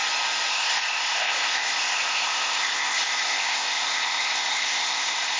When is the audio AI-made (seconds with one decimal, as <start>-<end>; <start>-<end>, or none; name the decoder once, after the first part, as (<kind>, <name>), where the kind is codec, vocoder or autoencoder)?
0.5-5.4 (codec, ZipCodec)

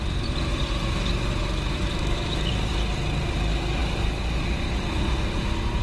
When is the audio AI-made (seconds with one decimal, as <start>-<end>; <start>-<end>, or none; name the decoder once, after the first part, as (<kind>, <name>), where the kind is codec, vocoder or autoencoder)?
1.4-2.5 (autoencoder, DAC-VAE)

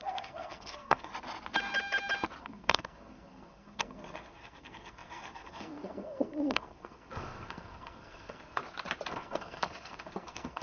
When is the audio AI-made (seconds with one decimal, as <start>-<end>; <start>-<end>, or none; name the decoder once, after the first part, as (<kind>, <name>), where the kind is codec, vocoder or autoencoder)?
0.0-1.1 (codec, SNAC); 2.4-8.6; 9.1-10.6

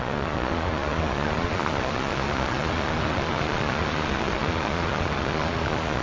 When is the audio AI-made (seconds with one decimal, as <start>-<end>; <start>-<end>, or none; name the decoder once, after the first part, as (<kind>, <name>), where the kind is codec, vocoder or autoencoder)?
0.0-6.0 (vocoder, Vocos)

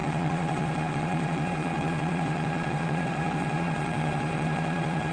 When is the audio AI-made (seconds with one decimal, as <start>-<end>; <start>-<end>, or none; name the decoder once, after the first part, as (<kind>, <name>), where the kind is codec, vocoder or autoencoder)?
0.0-5.1 (vocoder, Vocos)

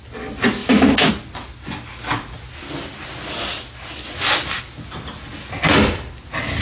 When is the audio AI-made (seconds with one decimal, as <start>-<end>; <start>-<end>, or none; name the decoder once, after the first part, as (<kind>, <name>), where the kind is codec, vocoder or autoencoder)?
0.6-1.1 (codec, DAC)

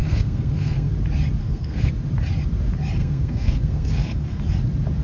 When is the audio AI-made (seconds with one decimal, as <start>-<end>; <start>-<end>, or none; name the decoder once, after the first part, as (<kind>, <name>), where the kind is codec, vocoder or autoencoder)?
0.0-0.9 (codec, SNAC); 1.4-1.9; 3.0-4.4

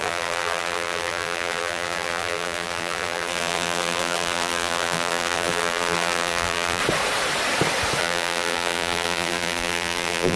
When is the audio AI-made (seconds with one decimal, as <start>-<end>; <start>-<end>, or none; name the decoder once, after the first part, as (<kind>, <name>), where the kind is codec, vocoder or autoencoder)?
0.0-6.8 (vocoder, BigVGAN v2); 8.0-10.4